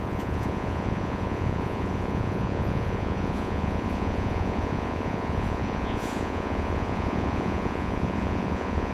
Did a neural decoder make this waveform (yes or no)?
yes